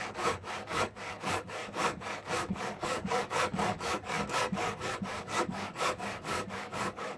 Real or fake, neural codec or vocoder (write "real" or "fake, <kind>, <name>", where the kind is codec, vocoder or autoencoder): fake, codec, DAC